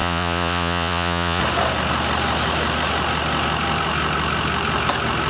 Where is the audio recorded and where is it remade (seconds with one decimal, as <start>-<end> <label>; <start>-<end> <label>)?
0.0-1.4 remade; 1.4-5.3 recorded